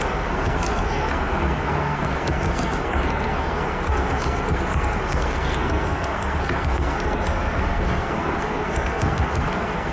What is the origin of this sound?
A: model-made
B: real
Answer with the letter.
A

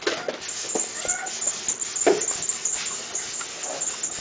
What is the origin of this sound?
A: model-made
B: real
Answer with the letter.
B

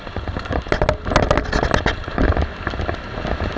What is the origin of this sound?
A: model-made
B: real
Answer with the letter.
B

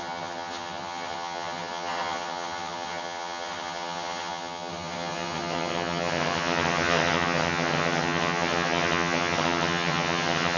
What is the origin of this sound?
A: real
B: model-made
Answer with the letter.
B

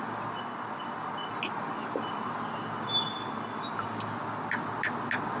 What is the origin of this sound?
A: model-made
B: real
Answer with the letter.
B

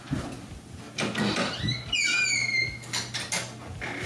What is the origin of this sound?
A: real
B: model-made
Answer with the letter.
A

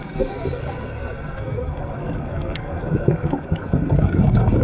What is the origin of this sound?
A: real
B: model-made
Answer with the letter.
B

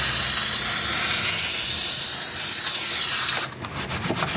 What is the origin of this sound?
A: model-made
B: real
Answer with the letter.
B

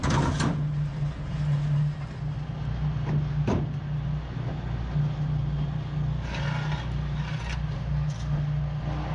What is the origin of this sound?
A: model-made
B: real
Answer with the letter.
B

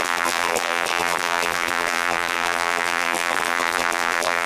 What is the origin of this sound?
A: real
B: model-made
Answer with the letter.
B